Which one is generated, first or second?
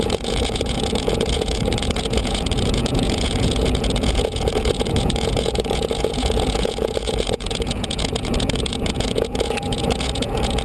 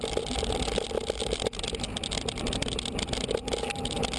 first